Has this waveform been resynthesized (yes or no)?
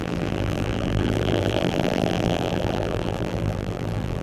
yes